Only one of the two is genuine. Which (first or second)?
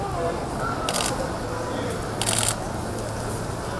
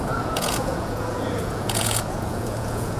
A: first